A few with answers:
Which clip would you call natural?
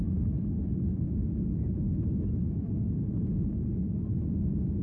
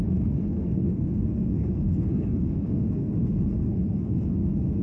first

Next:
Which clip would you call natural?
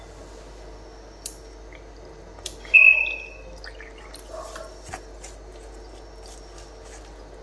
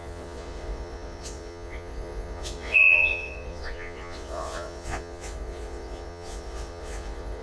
first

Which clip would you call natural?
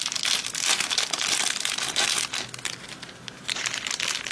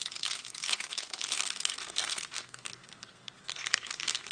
first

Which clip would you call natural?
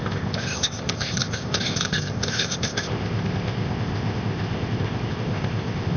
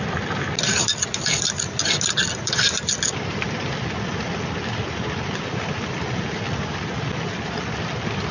second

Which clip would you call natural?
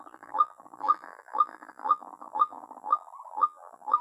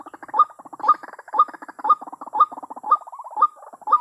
second